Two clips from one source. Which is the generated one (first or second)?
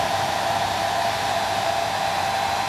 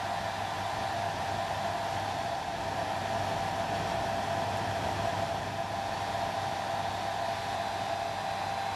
first